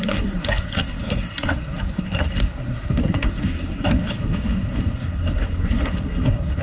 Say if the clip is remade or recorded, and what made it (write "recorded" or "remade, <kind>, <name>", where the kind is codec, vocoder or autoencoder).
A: remade, codec, SNAC